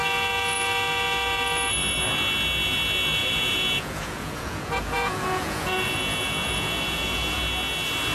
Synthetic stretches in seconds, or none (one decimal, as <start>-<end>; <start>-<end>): 3.2-7.4